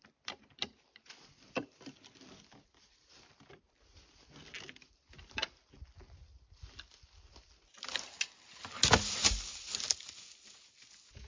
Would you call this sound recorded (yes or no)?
yes